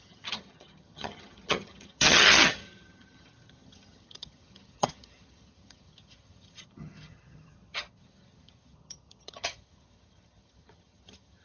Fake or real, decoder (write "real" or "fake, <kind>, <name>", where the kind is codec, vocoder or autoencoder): fake, vocoder, HiFi-GAN